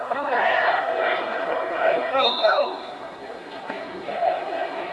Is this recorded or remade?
remade